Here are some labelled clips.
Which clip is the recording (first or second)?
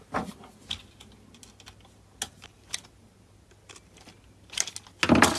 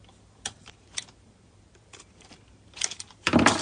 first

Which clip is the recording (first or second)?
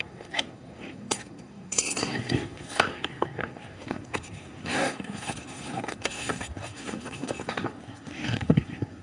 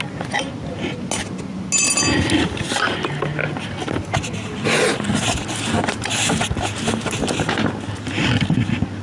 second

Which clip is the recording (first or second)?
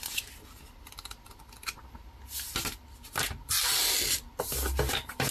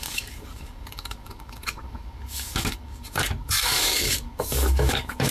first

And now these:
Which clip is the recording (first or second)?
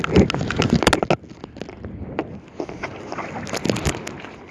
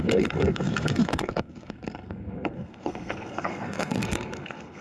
first